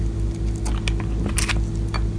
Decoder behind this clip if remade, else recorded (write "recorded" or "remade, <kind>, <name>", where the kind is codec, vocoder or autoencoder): recorded